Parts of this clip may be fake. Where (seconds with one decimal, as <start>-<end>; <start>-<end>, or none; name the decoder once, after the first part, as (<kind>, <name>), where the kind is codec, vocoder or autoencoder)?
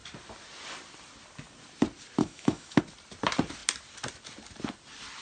2.2-2.8 (autoencoder, DAC-VAE)